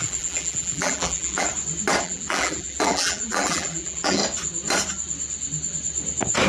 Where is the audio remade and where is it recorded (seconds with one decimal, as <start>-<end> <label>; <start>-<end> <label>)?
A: 0.0-1.5 remade; 1.5-2.0 recorded; 2.0-4.2 remade; 4.2-6.5 recorded